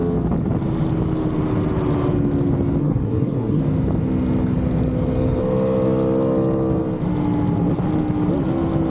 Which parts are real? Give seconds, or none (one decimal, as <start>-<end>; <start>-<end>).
0.0-2.8; 3.6-8.9